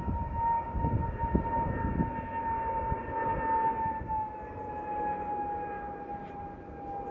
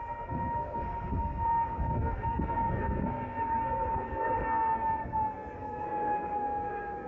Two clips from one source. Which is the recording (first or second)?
first